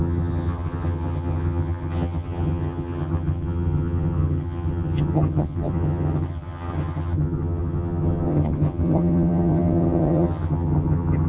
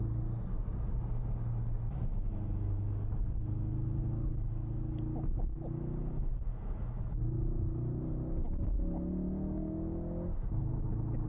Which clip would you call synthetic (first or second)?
first